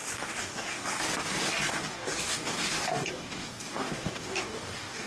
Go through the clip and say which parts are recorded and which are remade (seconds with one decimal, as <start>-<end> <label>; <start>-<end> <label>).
0.0-1.0 remade; 1.0-1.7 recorded; 1.7-5.1 remade